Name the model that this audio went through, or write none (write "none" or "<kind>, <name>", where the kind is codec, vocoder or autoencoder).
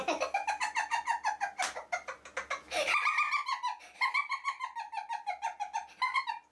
none